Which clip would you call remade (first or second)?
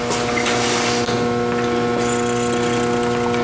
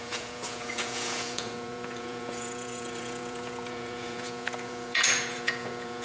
second